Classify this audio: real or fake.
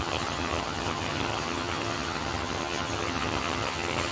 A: fake